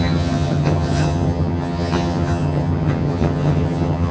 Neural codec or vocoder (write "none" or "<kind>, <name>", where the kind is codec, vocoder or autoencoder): vocoder, HiFi-GAN